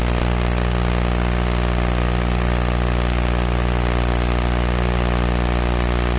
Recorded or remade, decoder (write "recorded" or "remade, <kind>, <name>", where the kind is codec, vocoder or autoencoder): recorded